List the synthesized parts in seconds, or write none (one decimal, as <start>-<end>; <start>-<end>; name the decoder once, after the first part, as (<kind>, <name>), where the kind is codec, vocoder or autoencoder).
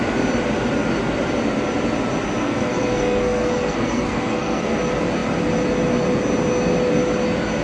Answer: 2.4-4.8 (codec, SNAC)